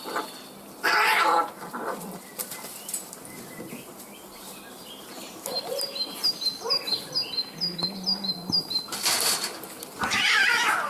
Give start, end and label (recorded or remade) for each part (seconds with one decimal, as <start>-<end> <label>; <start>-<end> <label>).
0.0-1.1 recorded; 1.1-3.9 remade; 3.9-10.9 recorded